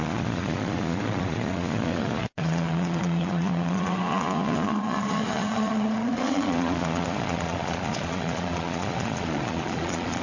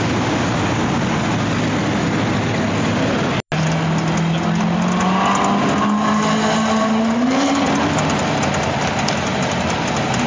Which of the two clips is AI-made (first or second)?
first